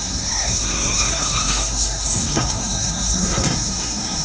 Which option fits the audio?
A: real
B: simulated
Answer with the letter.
B